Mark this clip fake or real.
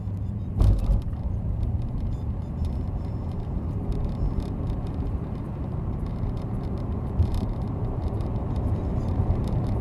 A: fake